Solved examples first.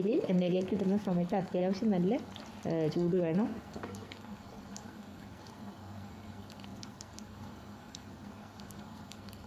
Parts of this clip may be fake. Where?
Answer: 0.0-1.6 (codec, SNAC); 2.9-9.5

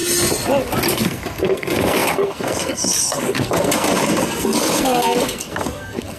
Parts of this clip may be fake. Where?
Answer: 0.9-6.2 (codec, SNAC)

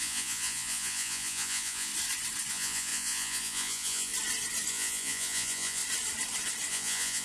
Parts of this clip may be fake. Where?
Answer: 0.0-1.9 (vocoder, Vocos); 2.5-4.1; 4.7-5.8; 6.7-7.2

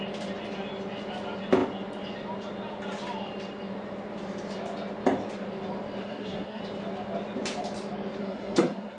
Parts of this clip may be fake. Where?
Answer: 6.0-6.6 (codec, SNAC); 8.2-9.0